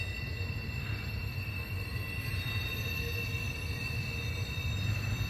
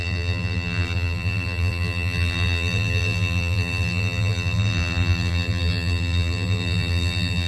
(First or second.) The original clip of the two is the first